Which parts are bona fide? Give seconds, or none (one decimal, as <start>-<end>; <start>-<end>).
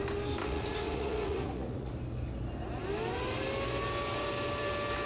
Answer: 0.0-0.4; 1.9-5.1